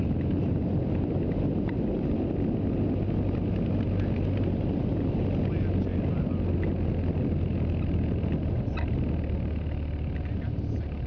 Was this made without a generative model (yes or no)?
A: yes